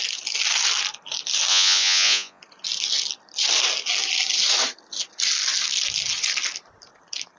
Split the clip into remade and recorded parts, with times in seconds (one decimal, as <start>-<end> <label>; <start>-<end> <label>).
0.0-1.5 recorded; 1.5-2.4 remade; 2.4-7.4 recorded